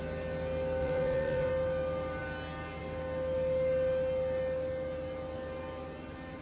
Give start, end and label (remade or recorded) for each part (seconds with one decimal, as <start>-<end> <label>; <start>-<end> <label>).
0.0-0.8 recorded; 0.8-1.5 remade; 1.5-6.4 recorded